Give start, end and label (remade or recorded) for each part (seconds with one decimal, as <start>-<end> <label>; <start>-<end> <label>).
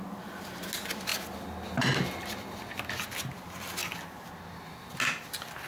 0.0-5.7 recorded